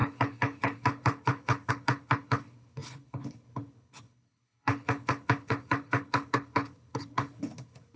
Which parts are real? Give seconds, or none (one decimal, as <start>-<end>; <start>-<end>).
none